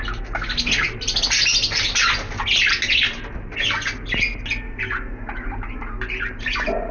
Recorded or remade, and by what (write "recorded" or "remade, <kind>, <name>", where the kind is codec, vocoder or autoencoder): recorded